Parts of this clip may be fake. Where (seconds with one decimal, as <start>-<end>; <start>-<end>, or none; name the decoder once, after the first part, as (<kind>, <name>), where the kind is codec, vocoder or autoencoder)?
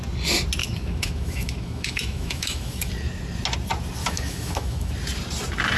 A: 0.6-2.9 (autoencoder, DAC-VAE); 4.0-4.9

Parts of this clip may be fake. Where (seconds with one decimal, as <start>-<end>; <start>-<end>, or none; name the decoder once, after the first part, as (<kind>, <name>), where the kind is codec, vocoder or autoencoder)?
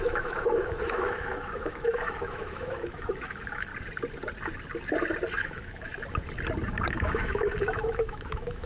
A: 0.0-3.7 (autoencoder, DAC-VAE); 5.4-5.9; 6.9-8.7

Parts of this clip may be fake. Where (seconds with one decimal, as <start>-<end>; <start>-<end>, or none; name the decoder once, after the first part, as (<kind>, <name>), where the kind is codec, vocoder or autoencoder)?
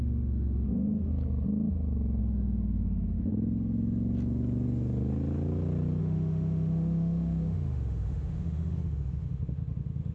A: 0.0-1.1 (autoencoder, DAC-VAE); 2.2-3.3; 6.0-10.1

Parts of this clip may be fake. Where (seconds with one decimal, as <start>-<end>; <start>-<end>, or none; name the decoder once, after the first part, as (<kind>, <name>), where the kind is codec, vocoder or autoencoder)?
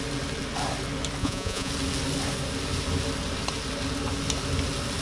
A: 1.2-1.7 (vocoder, Vocos)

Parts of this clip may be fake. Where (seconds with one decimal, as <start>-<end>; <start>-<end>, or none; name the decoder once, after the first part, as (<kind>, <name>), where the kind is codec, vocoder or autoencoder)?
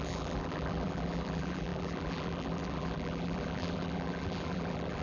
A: 0.0-5.0 (vocoder, BigVGAN v2)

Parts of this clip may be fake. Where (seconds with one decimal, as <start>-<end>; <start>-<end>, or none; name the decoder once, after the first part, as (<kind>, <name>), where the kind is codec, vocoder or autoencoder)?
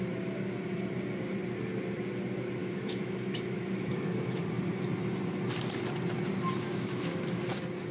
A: 2.6-4.4 (autoencoder, DAC-VAE); 6.7-7.4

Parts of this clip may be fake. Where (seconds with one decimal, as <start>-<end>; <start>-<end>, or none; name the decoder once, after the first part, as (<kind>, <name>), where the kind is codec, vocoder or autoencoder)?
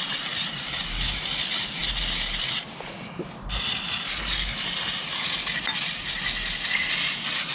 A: none